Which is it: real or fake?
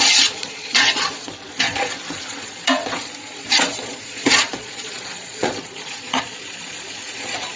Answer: fake